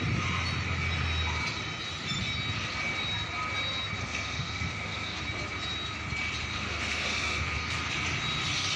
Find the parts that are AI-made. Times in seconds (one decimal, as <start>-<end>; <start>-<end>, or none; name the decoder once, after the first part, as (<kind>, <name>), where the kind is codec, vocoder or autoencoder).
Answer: 4.0-5.2 (codec, SNAC); 6.5-7.9